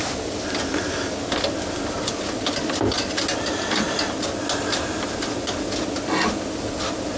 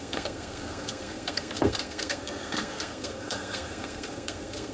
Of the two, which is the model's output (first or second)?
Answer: second